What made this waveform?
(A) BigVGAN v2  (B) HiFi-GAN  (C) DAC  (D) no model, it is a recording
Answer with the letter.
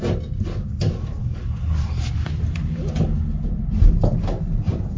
D